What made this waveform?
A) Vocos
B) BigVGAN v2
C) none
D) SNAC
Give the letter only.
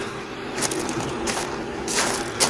B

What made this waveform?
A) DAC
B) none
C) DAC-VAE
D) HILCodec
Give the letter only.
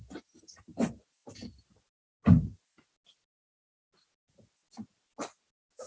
B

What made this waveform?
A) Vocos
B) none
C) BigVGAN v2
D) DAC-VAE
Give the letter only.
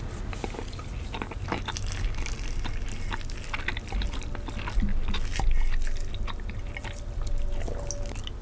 B